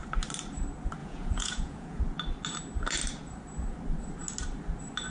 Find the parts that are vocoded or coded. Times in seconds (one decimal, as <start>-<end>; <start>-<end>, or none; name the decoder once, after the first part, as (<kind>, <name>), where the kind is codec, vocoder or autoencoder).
1.0-2.0 (vocoder, Vocos)